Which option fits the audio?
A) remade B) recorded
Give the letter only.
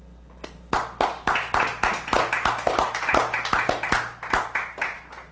B